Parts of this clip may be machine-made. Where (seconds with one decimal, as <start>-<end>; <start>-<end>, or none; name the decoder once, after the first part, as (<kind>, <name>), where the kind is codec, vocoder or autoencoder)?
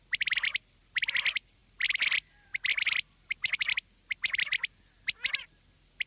none